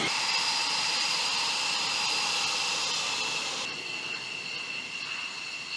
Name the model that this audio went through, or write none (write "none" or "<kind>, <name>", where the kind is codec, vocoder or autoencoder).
none